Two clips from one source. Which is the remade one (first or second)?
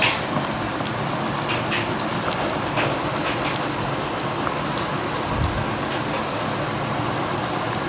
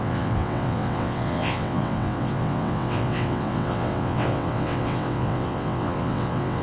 second